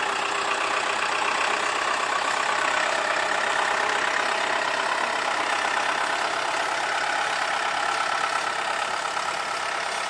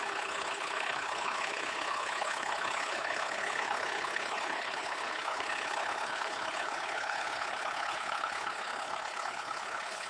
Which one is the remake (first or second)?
second